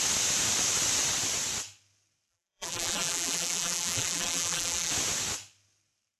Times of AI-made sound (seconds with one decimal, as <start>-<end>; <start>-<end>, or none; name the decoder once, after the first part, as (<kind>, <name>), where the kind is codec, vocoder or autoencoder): 2.3-4.9 (vocoder, BigVGAN v2)